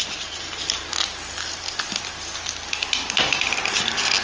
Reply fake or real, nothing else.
real